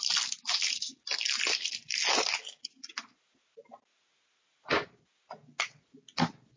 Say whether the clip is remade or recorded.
recorded